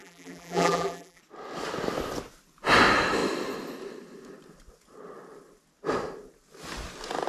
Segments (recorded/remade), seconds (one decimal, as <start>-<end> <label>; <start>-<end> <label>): 0.0-1.2 remade; 1.2-7.3 recorded